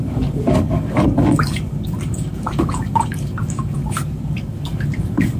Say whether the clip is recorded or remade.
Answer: remade